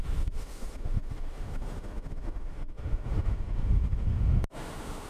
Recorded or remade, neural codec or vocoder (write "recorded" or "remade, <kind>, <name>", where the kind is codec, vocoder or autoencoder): remade, autoencoder, DAC-VAE